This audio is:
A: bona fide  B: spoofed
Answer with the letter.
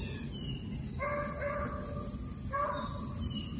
A